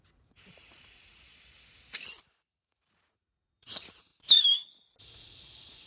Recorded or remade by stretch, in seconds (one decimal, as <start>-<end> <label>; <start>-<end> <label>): 0.0-1.3 remade; 1.3-2.5 recorded; 2.5-4.1 remade; 4.1-5.0 recorded; 5.0-5.9 remade

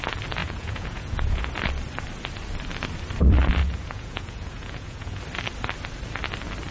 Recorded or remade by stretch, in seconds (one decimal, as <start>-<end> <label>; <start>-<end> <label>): 0.0-0.4 recorded; 0.4-1.5 remade; 1.5-3.6 recorded; 3.6-5.2 remade; 5.2-6.7 recorded